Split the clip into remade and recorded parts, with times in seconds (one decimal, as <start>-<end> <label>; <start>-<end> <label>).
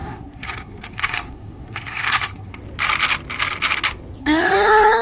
0.0-2.6 remade; 2.6-4.2 recorded; 4.2-5.0 remade